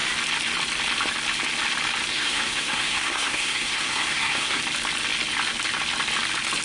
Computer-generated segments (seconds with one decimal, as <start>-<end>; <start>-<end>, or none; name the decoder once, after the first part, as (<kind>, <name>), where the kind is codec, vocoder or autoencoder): 2.1-4.6 (codec, SNAC)